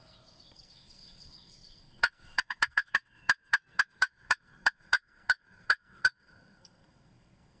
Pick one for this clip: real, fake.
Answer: fake